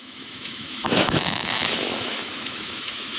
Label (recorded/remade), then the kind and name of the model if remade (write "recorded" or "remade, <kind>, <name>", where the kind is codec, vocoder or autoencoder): remade, autoencoder, DAC-VAE